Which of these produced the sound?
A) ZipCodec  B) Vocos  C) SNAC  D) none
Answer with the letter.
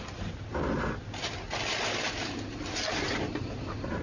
D